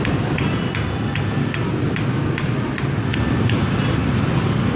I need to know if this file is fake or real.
real